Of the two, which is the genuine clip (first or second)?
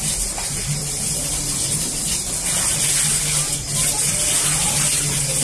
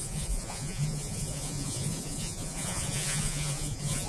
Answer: first